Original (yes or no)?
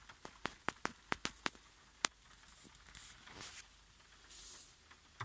yes